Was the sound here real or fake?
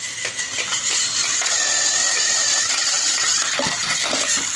real